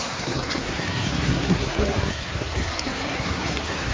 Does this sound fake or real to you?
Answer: fake